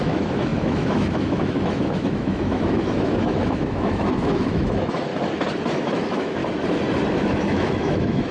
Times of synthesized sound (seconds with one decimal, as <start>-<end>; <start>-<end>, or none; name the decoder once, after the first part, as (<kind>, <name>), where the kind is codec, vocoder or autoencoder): 0.0-5.1 (autoencoder, DAC-VAE); 5.7-6.4; 7.1-8.3